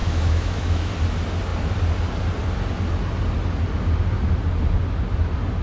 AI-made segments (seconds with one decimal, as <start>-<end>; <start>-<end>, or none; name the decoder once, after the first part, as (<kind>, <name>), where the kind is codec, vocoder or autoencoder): 0.0-0.9 (autoencoder, DAC-VAE)